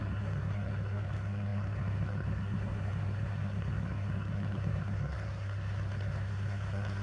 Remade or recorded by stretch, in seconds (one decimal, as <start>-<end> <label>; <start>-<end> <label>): 0.0-7.0 remade